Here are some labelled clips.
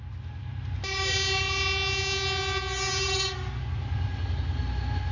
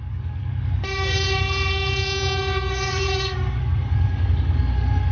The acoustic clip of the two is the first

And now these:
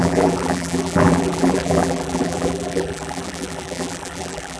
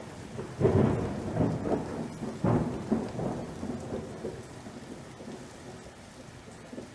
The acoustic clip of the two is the second